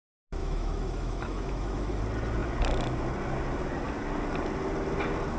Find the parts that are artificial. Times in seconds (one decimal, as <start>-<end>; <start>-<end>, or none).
0.4-2.0